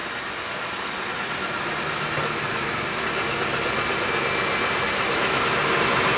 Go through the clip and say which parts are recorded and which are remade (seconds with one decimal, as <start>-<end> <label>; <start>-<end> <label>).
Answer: 0.0-6.2 recorded